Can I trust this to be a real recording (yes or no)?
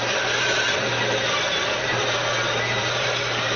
no